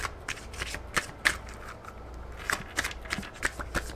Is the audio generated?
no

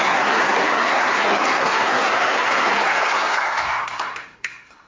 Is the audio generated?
yes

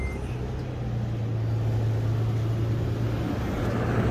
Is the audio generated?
no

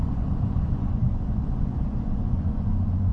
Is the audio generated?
yes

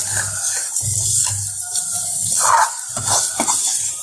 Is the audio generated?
no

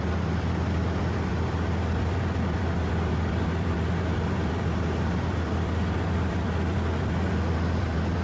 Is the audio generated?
yes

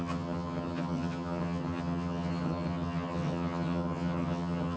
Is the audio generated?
yes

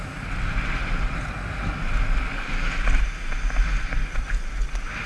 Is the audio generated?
no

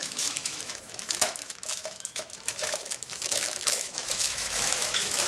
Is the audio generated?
yes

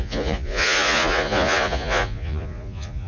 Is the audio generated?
yes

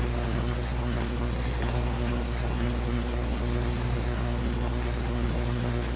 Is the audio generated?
yes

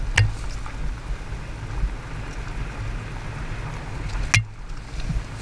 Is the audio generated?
no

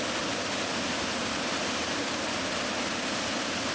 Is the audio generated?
no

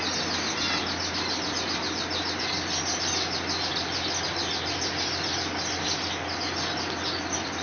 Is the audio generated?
no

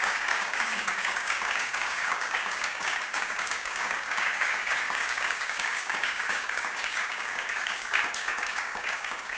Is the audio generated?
yes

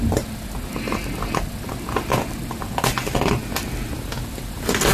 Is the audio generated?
no